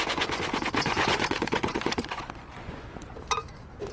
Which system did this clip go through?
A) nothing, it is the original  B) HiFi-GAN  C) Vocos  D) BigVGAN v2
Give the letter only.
C